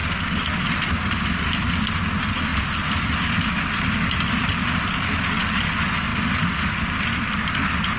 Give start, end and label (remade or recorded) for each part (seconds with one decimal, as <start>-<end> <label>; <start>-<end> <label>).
0.0-8.0 recorded